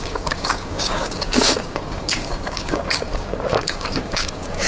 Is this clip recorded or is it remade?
remade